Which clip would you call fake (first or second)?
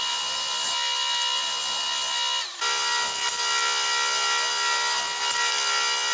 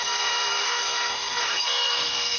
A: second